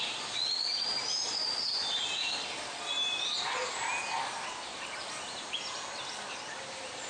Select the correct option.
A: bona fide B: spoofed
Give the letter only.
A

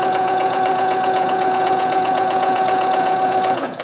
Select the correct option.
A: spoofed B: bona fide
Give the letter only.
A